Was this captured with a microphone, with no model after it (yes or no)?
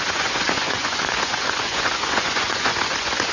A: no